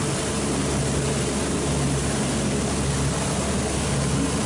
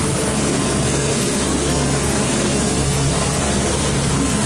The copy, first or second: second